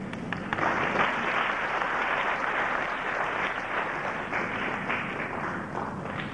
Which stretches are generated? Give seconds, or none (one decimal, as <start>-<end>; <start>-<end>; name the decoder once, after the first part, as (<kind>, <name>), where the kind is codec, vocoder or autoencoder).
none